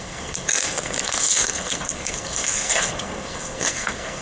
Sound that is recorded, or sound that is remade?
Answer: remade